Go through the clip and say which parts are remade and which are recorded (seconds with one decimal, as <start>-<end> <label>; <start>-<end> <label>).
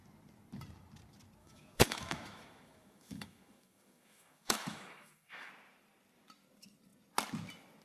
0.0-1.4 recorded; 1.4-5.5 remade; 5.5-7.8 recorded